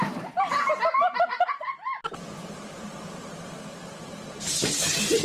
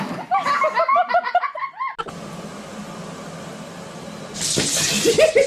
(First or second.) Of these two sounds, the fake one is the first